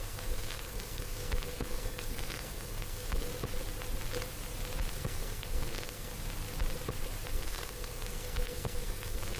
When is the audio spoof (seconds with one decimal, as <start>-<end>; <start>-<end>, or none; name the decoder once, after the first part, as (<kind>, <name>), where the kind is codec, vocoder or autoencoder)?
0.0-3.3 (codec, SNAC); 4.9-6.1; 7.3-9.4